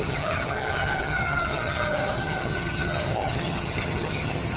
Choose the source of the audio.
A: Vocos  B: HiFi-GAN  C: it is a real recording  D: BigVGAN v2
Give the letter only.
B